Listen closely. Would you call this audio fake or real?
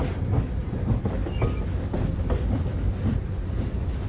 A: real